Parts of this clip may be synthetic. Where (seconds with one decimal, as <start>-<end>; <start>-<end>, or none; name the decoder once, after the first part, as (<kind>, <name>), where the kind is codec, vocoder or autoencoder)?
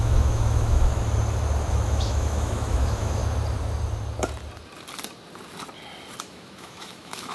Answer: 0.0-0.9 (autoencoder, DAC-VAE); 1.7-3.2; 6.2-7.3